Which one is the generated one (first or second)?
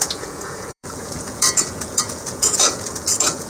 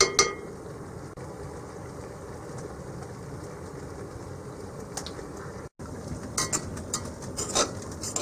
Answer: first